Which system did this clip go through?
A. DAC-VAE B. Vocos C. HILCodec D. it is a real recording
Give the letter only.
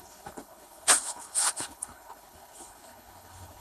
C